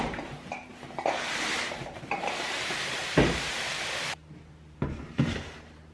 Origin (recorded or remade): remade